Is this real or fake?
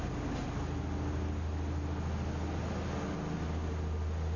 real